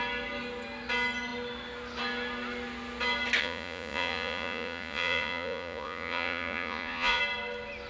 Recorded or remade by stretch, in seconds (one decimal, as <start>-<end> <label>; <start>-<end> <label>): 0.0-3.4 recorded; 3.4-7.2 remade; 7.2-7.9 recorded

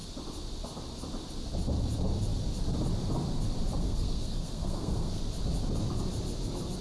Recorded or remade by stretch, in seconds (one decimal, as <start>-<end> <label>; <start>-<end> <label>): 0.0-3.8 recorded; 3.8-5.2 remade; 5.2-6.8 recorded

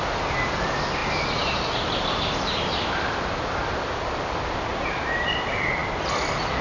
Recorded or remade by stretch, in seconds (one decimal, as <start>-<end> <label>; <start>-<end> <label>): 0.0-6.6 recorded